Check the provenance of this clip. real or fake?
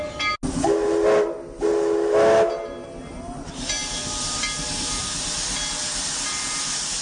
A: real